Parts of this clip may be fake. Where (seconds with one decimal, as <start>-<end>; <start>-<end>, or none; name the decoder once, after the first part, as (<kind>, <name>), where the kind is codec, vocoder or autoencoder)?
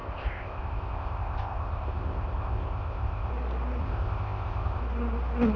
0.0-3.3 (codec, ZipCodec); 3.8-4.8